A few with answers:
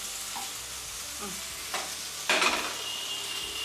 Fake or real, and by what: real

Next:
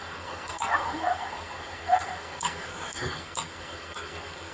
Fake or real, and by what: fake, codec, SNAC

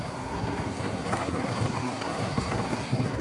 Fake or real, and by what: fake, codec, SNAC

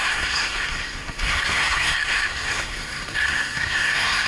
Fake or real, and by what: fake, codec, SNAC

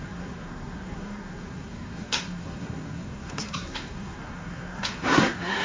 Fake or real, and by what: fake, codec, SNAC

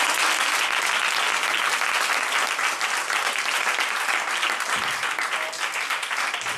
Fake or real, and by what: real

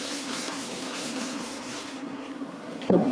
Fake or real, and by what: fake, codec, SNAC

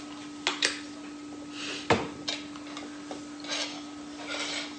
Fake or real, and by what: real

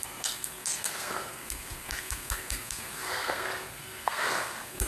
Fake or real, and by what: fake, codec, SNAC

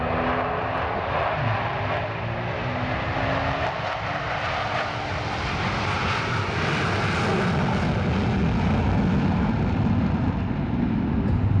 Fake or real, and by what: real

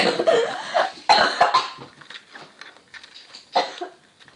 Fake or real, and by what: real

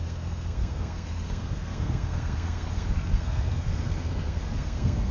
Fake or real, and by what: fake, codec, SNAC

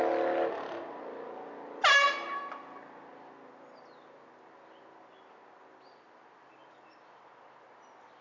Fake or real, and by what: real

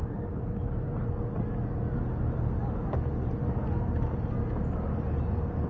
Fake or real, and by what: real